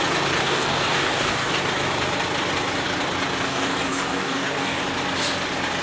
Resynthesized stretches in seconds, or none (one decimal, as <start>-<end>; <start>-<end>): 0.4-1.5; 3.5-4.8